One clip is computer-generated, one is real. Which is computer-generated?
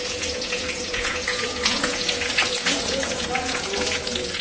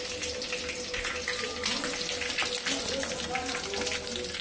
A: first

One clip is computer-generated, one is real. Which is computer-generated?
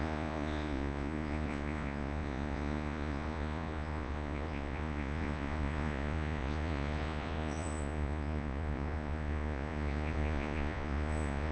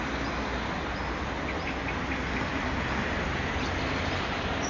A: first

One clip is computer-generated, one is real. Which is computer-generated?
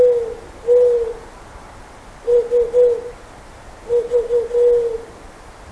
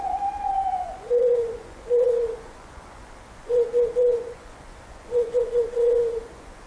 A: second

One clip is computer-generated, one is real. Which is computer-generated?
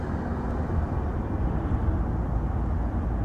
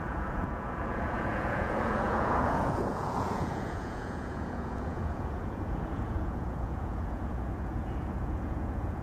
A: second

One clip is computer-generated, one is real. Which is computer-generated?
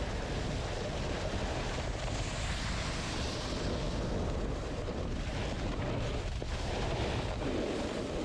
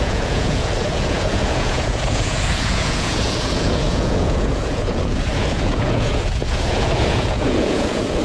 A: second